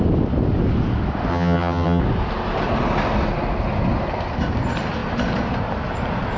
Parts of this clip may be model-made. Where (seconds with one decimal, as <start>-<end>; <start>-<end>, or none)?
1.3-2.0